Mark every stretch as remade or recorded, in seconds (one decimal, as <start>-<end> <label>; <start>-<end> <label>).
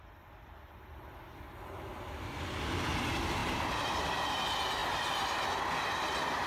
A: 0.0-1.9 recorded; 1.9-2.5 remade; 2.5-3.4 recorded; 3.4-4.0 remade; 4.0-6.5 recorded